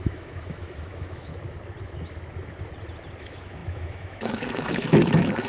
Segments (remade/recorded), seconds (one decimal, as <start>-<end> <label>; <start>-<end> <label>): 0.0-1.3 remade; 1.3-3.2 recorded; 3.2-5.5 remade